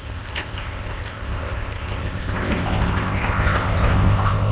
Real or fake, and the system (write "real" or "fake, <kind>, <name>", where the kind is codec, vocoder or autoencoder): fake, codec, ZipCodec